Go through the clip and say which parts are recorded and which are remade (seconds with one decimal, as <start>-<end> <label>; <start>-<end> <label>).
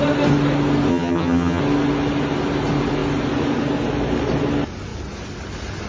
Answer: 0.0-0.9 recorded; 0.9-1.6 remade; 1.6-5.9 recorded